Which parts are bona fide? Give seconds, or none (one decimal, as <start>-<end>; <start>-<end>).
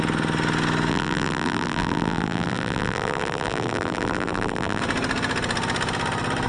0.0-0.9; 4.8-6.5